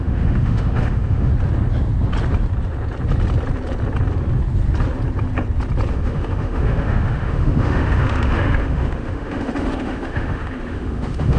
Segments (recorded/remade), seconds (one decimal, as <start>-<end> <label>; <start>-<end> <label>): 0.0-1.3 remade; 1.3-5.9 recorded; 5.9-11.4 remade